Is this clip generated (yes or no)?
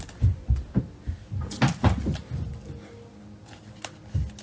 no